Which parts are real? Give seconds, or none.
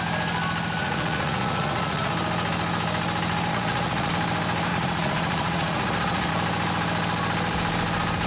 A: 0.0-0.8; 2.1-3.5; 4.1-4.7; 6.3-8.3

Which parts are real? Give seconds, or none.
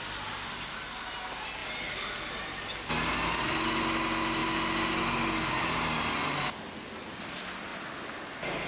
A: 0.0-8.7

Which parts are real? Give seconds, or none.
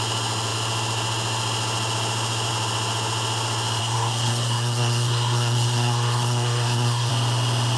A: 0.0-3.8; 7.1-7.8